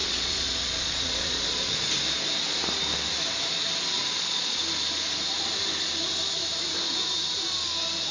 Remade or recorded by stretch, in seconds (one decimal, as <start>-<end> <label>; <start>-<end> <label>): 0.0-1.9 remade; 1.9-4.0 recorded; 4.0-4.6 remade; 4.6-8.1 recorded